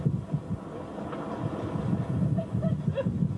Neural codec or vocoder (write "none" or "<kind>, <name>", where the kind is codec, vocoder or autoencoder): none